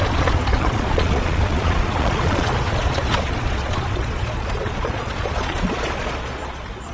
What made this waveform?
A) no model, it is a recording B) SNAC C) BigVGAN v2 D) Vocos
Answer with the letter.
D